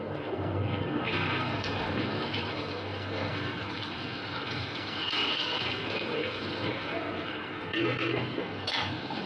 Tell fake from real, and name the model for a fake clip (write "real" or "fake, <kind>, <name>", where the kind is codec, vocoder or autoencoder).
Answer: fake, codec, SNAC